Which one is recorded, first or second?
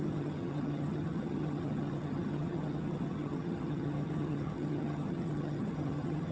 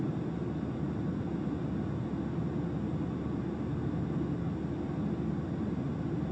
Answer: second